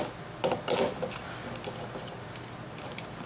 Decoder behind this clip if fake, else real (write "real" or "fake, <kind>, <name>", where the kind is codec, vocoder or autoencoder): real